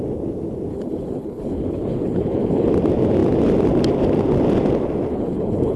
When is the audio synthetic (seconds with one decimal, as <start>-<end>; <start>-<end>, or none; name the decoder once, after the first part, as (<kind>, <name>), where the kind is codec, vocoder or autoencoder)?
0.7-2.7 (codec, HILCodec); 5.1-5.8